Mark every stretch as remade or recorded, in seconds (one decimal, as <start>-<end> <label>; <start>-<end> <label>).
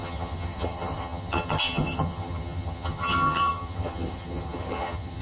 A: 0.0-5.2 remade